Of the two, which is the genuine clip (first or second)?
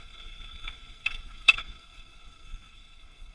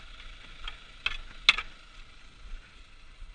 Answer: second